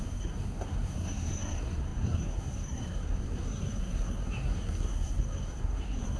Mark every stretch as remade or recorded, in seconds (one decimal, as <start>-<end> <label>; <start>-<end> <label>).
0.0-6.2 remade